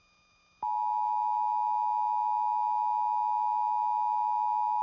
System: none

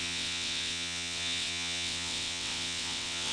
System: vocoder, WaveNeXt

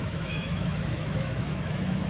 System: autoencoder, DAC-VAE